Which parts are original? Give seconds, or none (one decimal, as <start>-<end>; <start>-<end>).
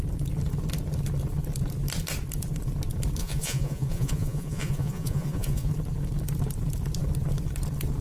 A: 0.0-3.2; 5.7-8.0